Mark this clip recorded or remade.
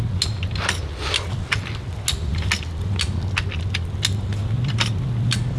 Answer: recorded